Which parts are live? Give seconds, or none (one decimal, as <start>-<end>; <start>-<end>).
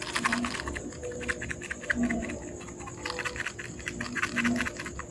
0.0-5.1